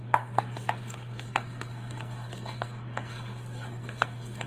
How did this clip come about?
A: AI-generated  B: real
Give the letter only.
A